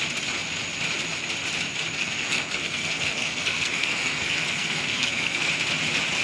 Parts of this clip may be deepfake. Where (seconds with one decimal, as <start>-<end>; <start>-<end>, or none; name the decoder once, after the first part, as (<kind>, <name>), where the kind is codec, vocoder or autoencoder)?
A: 2.0-5.5 (codec, SNAC)